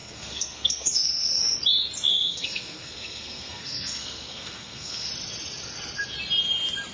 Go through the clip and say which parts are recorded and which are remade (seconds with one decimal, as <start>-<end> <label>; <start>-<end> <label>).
0.0-1.4 remade; 1.4-2.1 recorded; 2.1-5.1 remade; 5.1-6.9 recorded